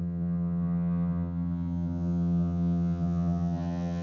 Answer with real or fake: fake